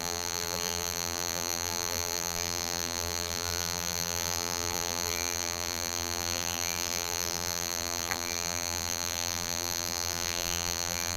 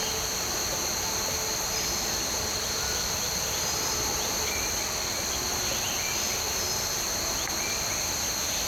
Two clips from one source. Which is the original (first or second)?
second